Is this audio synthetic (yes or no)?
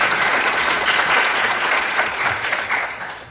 yes